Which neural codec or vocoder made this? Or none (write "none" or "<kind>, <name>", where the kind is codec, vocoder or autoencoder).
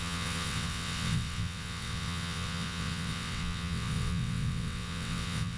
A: vocoder, WaveNeXt